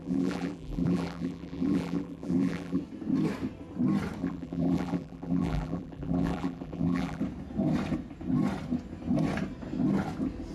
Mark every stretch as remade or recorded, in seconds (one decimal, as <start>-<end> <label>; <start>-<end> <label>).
0.0-2.8 remade; 2.8-4.2 recorded; 4.2-7.2 remade; 7.2-10.5 recorded

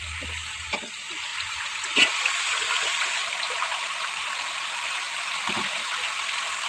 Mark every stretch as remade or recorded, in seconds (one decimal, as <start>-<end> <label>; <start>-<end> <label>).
0.0-3.2 recorded; 3.2-5.3 remade; 5.3-6.7 recorded

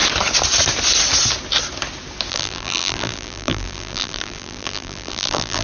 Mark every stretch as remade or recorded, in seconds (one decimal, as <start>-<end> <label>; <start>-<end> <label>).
0.0-2.3 recorded; 2.3-5.6 remade

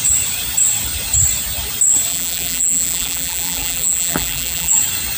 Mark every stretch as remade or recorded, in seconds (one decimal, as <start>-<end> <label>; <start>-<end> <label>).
0.0-2.1 recorded; 2.1-4.7 remade; 4.7-5.2 recorded